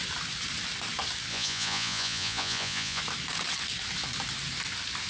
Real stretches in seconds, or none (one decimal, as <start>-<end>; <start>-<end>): 0.0-1.3; 3.0-5.1